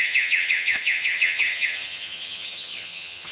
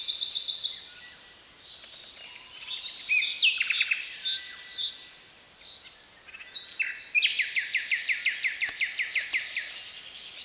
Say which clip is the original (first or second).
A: second